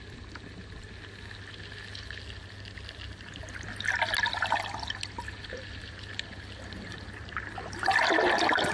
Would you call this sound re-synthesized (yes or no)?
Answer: no